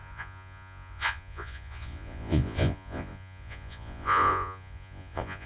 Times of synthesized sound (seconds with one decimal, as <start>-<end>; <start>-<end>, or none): 0.0-5.5